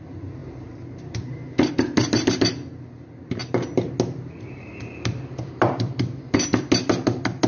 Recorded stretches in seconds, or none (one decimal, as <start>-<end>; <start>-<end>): 0.0-7.5